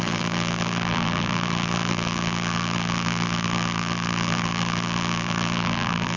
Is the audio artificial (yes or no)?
yes